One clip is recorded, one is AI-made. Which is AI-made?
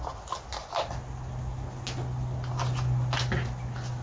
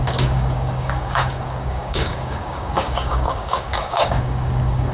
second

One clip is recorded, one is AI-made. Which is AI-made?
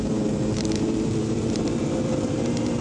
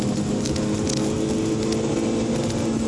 first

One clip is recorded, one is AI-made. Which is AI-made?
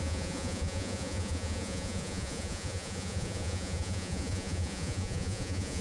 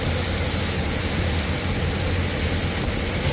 first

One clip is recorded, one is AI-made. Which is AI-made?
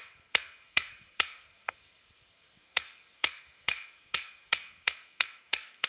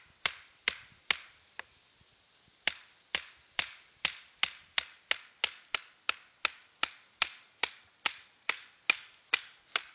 first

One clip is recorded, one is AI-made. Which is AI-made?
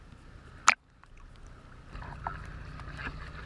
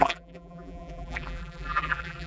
second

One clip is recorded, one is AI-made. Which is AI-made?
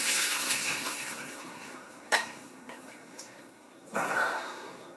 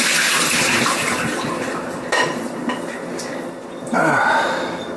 first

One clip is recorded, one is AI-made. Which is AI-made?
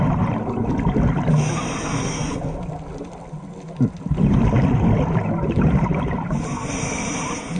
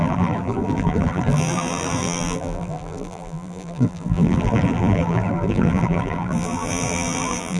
second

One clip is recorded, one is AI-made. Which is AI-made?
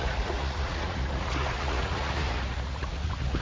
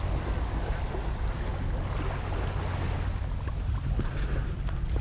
first